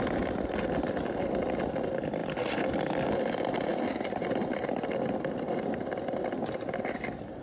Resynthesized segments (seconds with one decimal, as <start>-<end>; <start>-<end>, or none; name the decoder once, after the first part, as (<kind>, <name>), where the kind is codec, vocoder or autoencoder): 2.2-3.2 (vocoder, BigVGAN v2); 3.7-5.2